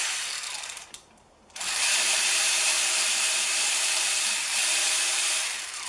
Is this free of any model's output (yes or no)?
no